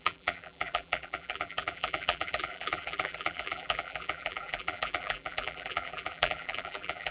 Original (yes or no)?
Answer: no